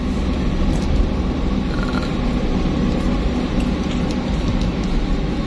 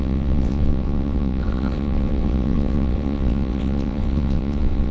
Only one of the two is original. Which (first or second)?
first